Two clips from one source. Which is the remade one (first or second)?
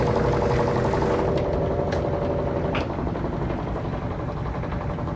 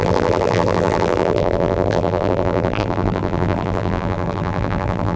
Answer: second